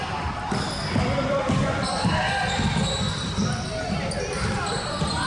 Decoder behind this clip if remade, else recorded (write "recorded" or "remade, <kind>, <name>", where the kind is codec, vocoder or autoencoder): recorded